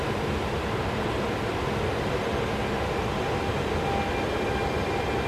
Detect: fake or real real